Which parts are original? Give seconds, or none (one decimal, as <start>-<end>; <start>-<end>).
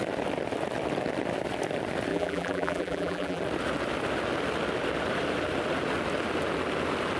0.0-2.1; 3.4-7.2